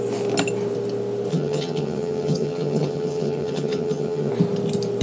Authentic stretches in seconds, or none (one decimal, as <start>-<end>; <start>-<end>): 0.0-1.3; 4.3-5.0